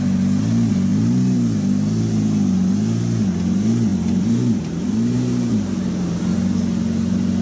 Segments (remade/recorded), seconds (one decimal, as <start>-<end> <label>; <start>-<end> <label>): 0.0-3.9 recorded; 3.9-6.2 remade; 6.2-7.4 recorded